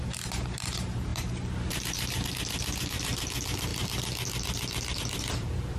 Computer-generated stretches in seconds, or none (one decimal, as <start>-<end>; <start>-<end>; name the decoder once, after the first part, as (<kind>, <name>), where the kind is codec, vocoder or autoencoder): 0.0-3.7 (vocoder, BigVGAN v2); 5.0-5.8